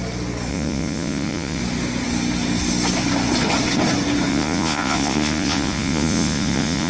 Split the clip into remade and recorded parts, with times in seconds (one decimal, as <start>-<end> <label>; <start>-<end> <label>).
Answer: 0.0-0.5 recorded; 0.5-1.6 remade; 1.6-4.3 recorded; 4.3-6.9 remade